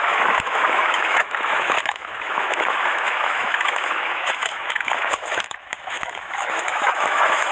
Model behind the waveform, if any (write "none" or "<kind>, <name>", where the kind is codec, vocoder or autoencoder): autoencoder, DAC-VAE